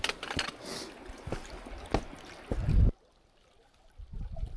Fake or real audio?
real